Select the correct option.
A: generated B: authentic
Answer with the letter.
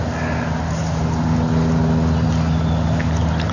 B